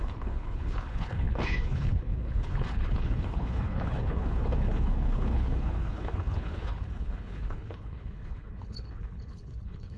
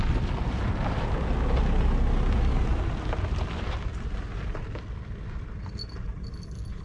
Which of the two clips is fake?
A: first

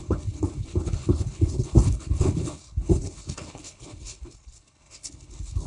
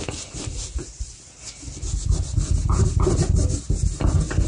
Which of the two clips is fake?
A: first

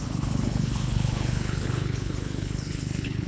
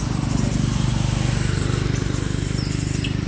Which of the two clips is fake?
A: first